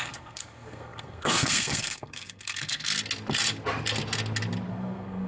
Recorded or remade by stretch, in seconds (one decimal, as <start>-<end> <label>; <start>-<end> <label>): 0.0-2.9 remade; 2.9-4.7 recorded; 4.7-5.3 remade